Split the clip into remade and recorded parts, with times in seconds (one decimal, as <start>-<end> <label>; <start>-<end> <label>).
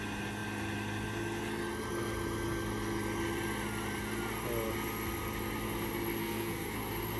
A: 0.0-6.2 recorded; 6.2-6.8 remade; 6.8-7.2 recorded